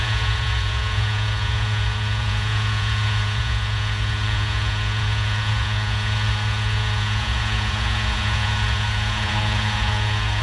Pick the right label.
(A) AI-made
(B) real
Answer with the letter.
A